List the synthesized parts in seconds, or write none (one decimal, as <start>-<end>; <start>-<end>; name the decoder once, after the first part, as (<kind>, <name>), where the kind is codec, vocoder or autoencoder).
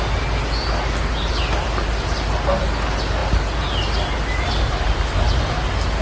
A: none